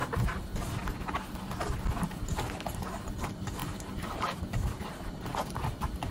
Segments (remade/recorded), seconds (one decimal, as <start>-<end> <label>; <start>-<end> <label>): 0.0-3.6 recorded; 3.6-4.4 remade; 4.4-6.1 recorded